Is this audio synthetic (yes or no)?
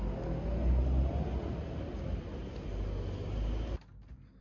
no